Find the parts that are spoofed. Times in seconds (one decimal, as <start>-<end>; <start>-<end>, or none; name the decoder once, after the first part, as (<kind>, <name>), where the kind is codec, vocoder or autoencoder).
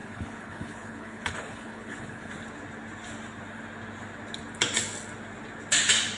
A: 0.0-2.3 (codec, HILCodec)